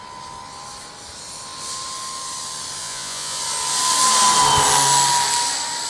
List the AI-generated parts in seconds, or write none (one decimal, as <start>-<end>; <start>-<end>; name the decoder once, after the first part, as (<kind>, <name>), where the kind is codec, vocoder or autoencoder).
2.8-3.4 (vocoder, Vocos)